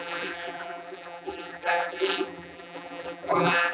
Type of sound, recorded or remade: remade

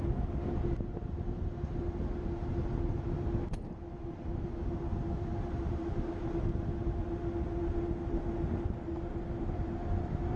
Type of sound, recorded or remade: recorded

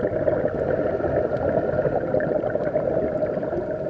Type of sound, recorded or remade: recorded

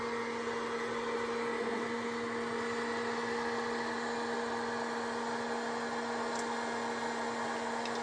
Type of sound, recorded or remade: recorded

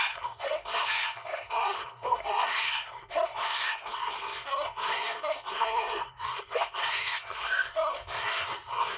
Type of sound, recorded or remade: remade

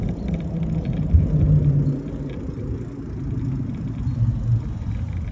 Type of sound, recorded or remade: recorded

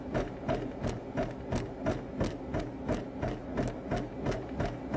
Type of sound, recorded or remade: recorded